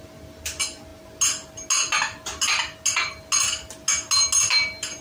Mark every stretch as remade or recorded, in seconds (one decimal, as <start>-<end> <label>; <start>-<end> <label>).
0.0-5.0 recorded